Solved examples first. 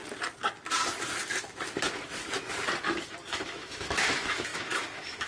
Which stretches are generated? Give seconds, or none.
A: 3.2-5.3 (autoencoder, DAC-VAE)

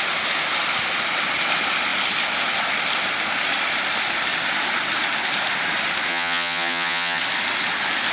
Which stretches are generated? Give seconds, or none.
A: 6.1-7.2 (vocoder, HiFi-GAN)

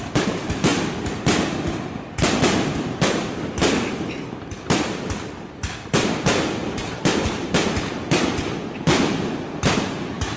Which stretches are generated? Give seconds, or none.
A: 0.0-0.7 (vocoder, BigVGAN v2); 2.7-10.4

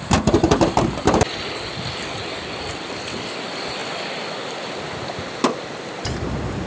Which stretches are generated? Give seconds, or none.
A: none

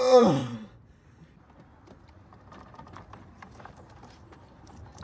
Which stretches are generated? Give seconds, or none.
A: 0.0-0.4 (vocoder, BigVGAN v2); 1.4-5.0

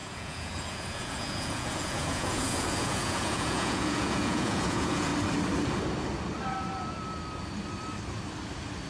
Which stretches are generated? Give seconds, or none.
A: 0.0-5.1 (vocoder, Vocos)

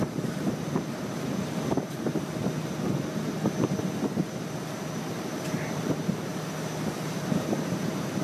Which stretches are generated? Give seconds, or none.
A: 0.0-2.4 (vocoder, BigVGAN v2); 5.1-6.3; 6.8-8.2